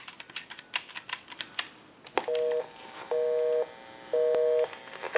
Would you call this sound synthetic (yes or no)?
no